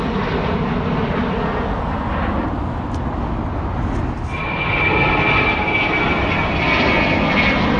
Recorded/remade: recorded